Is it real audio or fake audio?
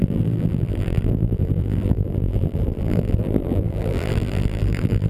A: fake